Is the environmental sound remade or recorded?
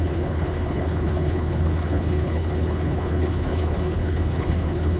remade